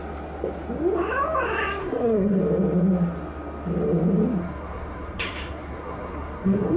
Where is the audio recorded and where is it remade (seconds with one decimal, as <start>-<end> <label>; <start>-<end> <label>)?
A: 0.0-1.8 recorded; 1.8-2.4 remade; 2.4-4.4 recorded; 4.4-6.8 remade